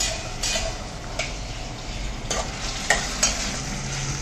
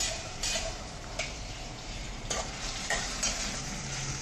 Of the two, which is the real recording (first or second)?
first